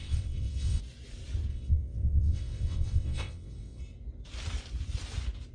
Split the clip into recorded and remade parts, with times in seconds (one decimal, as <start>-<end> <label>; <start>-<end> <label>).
0.0-0.8 remade; 0.8-1.5 recorded; 1.5-3.8 remade; 3.8-5.5 recorded